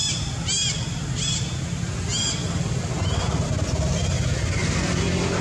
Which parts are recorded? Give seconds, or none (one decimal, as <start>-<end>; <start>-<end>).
0.0-5.4